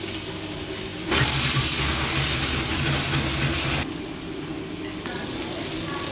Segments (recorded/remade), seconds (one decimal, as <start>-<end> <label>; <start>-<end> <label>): 0.0-6.1 recorded